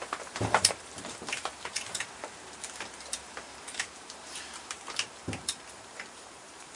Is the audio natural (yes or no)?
no